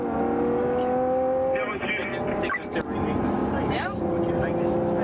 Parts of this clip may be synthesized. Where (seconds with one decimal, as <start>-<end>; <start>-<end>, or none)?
3.4-4.0